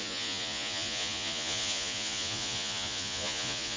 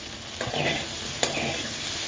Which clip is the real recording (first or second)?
second